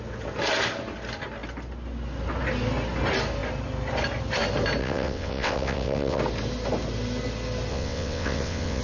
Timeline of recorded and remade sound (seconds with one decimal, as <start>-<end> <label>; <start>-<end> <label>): 0.0-4.8 recorded; 4.8-6.2 remade; 6.2-7.7 recorded; 7.7-8.8 remade